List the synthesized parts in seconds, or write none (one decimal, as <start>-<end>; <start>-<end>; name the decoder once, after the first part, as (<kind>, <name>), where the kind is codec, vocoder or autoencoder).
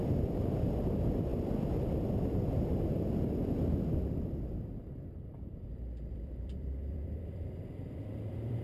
0.0-1.3 (vocoder, BigVGAN v2); 2.0-8.6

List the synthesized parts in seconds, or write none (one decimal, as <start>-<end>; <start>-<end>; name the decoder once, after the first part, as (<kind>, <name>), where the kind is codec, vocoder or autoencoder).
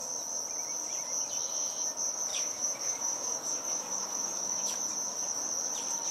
2.3-4.8 (codec, DAC)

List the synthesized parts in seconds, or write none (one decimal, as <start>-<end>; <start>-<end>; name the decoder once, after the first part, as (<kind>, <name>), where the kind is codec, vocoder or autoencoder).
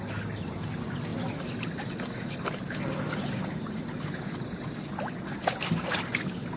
none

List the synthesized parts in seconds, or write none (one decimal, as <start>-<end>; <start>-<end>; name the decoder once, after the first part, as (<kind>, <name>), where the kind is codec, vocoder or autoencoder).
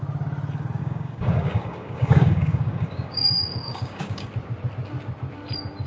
0.8-4.3 (codec, DAC)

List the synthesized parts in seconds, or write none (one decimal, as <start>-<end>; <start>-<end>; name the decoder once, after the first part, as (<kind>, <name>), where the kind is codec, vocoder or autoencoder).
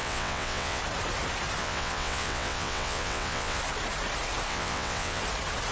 0.0-0.8 (vocoder, WaveNeXt); 1.6-3.6; 4.5-5.2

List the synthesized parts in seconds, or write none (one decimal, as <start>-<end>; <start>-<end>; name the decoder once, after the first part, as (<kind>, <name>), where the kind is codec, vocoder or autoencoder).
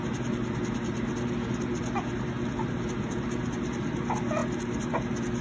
none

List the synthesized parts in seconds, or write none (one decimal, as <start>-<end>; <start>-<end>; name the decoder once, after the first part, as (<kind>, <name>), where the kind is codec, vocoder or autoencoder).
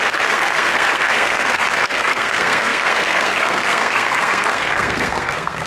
0.0-5.7 (codec, SNAC)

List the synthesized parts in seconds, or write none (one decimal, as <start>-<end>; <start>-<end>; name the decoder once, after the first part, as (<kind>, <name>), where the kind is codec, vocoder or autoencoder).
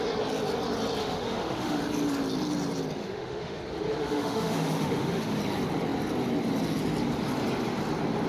1.0-1.8 (autoencoder, DAC-VAE); 3.0-3.6; 4.0-5.4